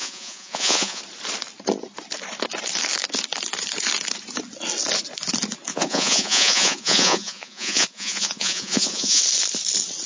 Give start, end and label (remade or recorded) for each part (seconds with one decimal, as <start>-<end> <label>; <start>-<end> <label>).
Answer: 0.0-1.0 remade; 1.0-5.7 recorded; 5.7-9.2 remade; 9.2-10.1 recorded